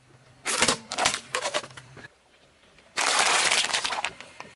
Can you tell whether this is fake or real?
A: fake